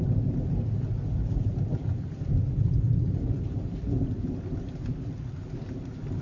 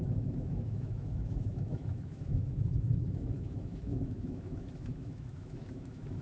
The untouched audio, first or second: first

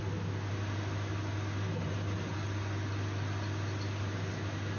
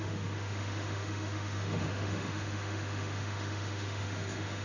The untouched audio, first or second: first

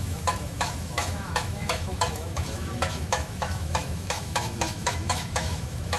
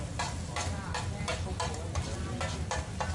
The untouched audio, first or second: second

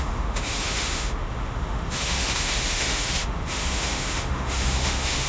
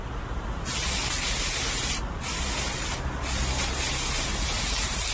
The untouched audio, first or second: second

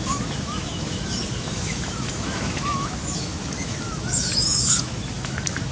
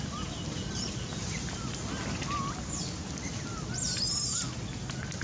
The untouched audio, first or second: second